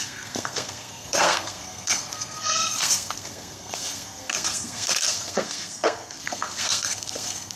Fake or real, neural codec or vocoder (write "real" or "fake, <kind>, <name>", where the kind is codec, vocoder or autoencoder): fake, codec, SNAC